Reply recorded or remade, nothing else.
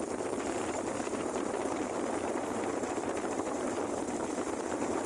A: remade